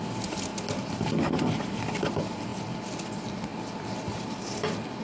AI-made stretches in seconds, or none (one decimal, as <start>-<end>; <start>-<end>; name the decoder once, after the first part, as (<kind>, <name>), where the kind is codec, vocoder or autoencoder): 0.0-0.5 (vocoder, BigVGAN v2); 1.2-2.5; 3.1-3.5